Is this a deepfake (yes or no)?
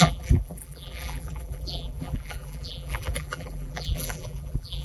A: yes